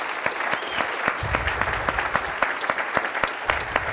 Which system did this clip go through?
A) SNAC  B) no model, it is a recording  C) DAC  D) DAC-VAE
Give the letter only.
B